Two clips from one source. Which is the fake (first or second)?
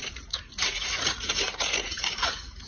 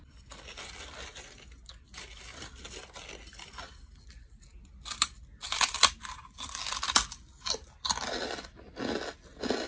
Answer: first